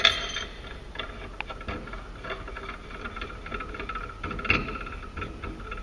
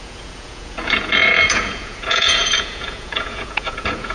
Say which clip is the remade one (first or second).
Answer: second